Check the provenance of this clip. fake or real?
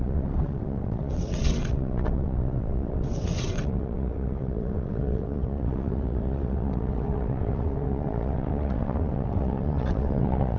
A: fake